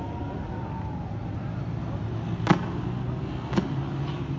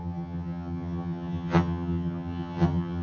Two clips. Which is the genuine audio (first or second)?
first